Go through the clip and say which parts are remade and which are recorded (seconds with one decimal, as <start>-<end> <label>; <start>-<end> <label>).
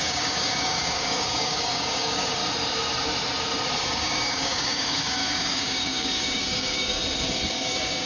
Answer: 0.0-2.4 remade; 2.4-3.9 recorded; 3.9-7.0 remade; 7.0-7.5 recorded; 7.5-8.1 remade